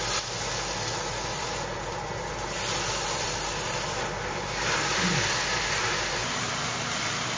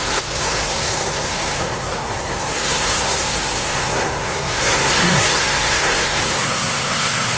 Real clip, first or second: first